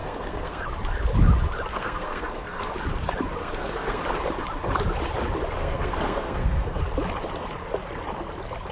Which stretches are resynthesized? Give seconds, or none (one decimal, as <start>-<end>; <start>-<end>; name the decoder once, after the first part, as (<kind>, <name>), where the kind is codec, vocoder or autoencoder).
0.0-0.6 (codec, SNAC); 1.7-2.7; 3.4-4.0; 5.6-6.8